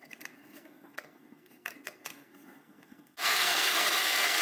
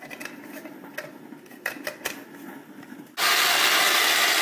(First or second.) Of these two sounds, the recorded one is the second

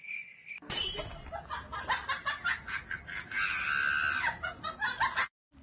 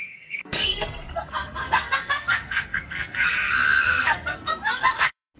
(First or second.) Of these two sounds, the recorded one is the first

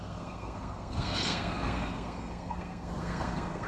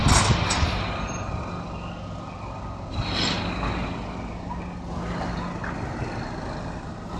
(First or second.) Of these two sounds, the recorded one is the second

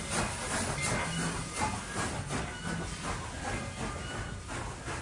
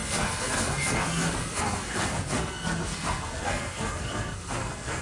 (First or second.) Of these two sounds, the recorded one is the first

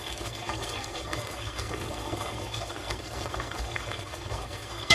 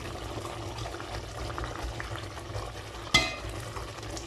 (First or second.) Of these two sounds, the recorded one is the second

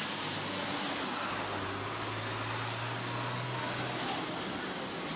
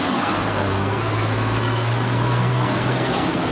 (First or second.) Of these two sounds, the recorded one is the first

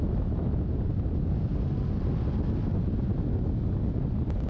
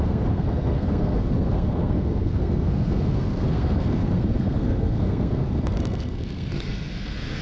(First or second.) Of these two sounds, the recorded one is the first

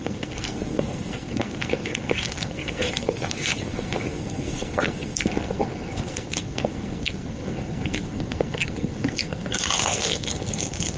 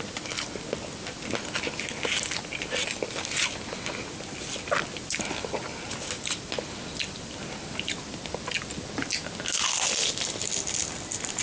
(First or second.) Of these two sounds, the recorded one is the second